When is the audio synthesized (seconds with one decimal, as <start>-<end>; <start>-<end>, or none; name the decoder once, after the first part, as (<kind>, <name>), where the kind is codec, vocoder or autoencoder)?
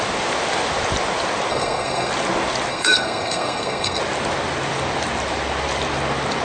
1.5-2.1 (codec, SNAC); 2.7-4.0